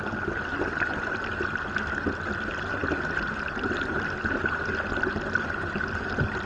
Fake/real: real